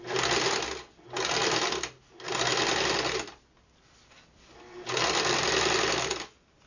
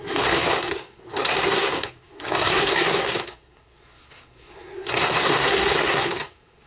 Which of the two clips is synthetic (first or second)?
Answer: second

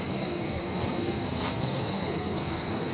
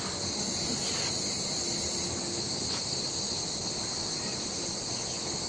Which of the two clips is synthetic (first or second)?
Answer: first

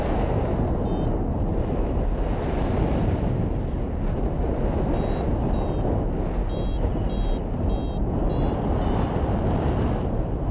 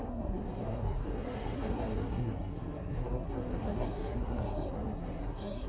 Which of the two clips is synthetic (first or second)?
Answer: second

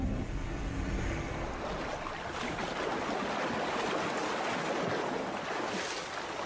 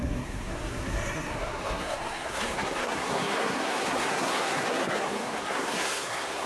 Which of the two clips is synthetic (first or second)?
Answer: second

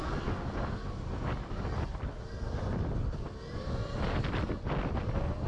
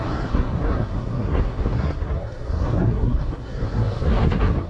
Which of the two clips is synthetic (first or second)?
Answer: second